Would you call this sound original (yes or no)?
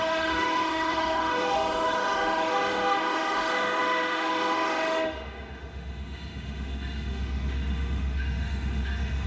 no